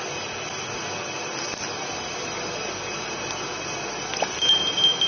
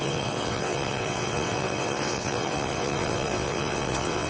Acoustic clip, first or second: first